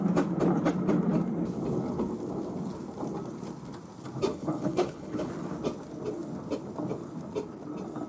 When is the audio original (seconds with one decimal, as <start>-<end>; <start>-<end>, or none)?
0.0-4.3; 5.3-8.1

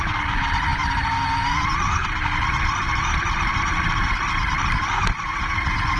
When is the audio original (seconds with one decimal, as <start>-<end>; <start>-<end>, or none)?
0.0-6.0